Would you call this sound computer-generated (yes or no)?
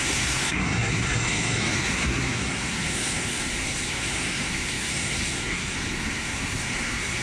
yes